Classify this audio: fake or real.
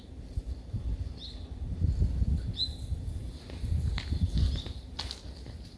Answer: real